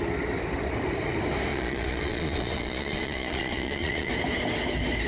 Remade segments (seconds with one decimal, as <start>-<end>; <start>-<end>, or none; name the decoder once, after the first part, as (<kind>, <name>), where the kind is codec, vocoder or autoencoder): 1.5-4.1 (vocoder, Vocos)